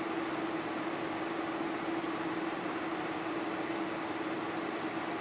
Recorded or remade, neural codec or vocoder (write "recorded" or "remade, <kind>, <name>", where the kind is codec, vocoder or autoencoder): recorded